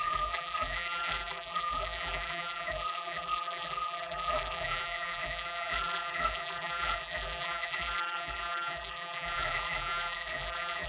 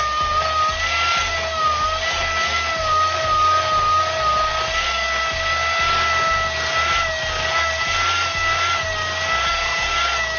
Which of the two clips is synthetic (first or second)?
first